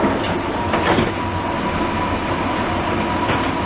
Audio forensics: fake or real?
real